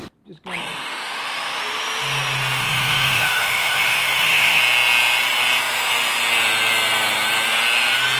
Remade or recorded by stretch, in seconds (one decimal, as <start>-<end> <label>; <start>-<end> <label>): 0.0-0.6 recorded; 0.6-1.6 remade; 1.6-2.6 recorded; 2.6-4.6 remade; 4.6-8.2 recorded